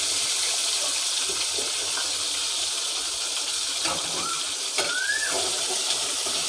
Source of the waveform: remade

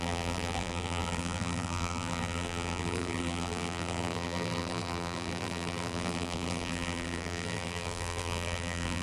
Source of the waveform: remade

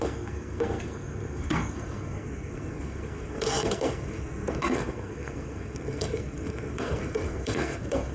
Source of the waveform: remade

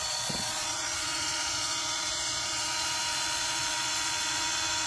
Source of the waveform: remade